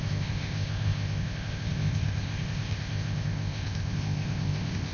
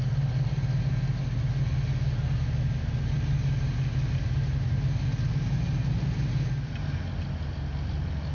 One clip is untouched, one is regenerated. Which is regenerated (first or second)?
first